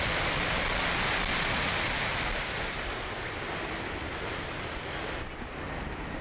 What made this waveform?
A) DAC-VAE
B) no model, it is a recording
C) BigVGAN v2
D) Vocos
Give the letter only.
B